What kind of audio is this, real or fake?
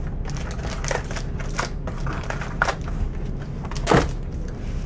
real